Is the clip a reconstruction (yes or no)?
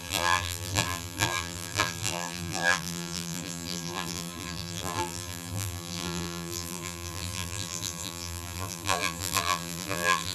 yes